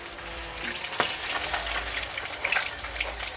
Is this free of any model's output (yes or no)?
yes